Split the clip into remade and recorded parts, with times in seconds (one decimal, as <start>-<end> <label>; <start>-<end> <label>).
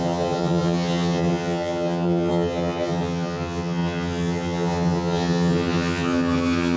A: 0.0-6.8 remade